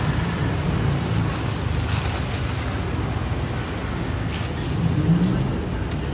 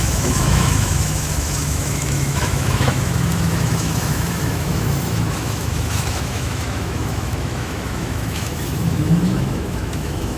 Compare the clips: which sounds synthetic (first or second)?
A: second